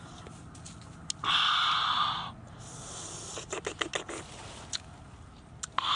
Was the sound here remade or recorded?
recorded